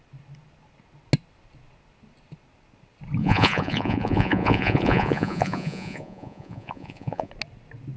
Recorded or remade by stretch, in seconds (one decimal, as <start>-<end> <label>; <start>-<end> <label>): 0.0-3.2 recorded; 3.2-7.3 remade; 7.3-8.0 recorded

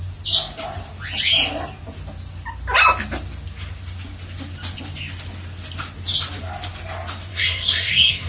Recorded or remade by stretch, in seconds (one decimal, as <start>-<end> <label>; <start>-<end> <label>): 0.0-7.3 recorded; 7.3-8.3 remade

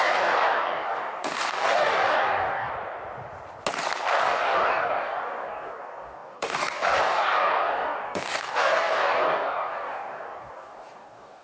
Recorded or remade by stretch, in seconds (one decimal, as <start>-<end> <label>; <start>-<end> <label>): 0.0-2.7 remade; 2.7-4.2 recorded; 4.2-11.4 remade

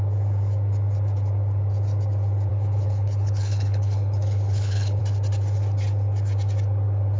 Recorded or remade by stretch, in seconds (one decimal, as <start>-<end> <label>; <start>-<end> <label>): 0.0-2.5 recorded; 2.5-5.0 remade; 5.0-7.2 recorded